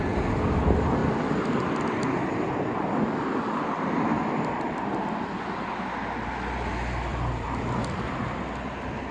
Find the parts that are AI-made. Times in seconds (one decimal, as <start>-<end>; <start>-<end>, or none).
1.0-1.8; 4.1-5.4; 7.1-8.2